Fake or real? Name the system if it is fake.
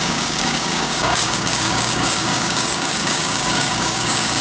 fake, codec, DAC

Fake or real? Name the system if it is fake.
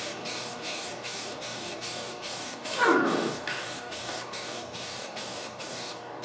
fake, codec, DAC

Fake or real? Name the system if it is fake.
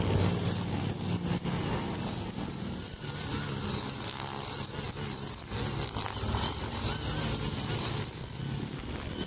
real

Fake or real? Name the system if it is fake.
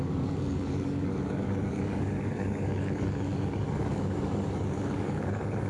fake, codec, DAC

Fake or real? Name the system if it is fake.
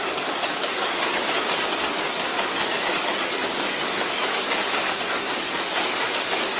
fake, codec, DAC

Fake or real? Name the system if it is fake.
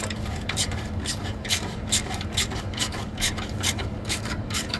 fake, codec, DAC